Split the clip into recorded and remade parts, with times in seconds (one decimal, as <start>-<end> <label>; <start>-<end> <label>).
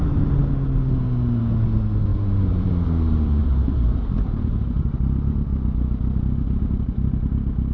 0.0-2.1 recorded; 2.1-2.7 remade; 2.7-3.4 recorded; 3.4-4.9 remade; 4.9-7.7 recorded